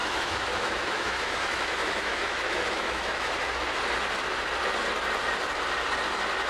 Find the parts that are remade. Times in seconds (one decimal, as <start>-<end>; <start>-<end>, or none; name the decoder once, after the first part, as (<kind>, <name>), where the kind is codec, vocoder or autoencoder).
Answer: 0.0-3.3 (autoencoder, DAC-VAE)